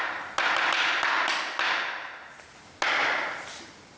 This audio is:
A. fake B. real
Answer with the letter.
B